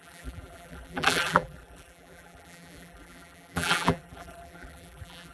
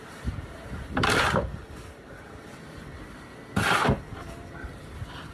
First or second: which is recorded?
second